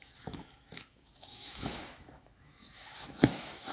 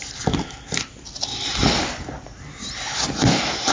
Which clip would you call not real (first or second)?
first